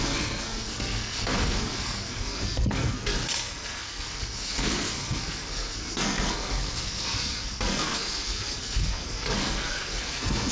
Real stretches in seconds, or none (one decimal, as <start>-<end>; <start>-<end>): none